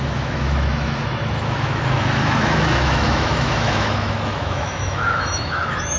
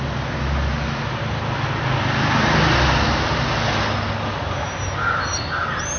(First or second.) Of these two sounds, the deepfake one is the first